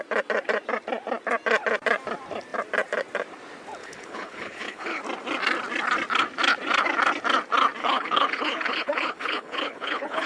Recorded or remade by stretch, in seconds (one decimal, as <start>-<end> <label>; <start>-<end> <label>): 0.0-3.8 recorded; 3.8-5.0 remade; 5.0-7.8 recorded; 7.8-10.3 remade